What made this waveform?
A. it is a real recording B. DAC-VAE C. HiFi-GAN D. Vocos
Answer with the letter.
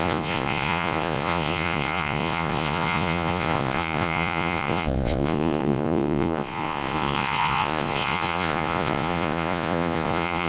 D